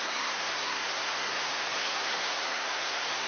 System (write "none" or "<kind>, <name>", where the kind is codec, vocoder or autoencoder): codec, SNAC